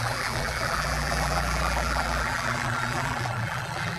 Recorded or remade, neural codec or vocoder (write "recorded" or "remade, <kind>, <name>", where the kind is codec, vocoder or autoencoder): remade, vocoder, BigVGAN v2